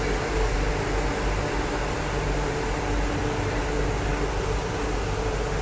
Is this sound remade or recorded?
recorded